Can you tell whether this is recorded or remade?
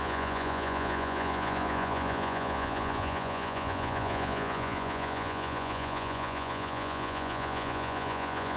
remade